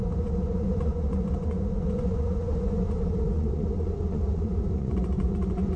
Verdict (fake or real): fake